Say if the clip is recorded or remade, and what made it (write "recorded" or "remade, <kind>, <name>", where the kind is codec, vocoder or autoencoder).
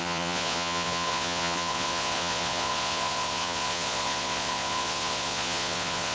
remade, vocoder, Vocos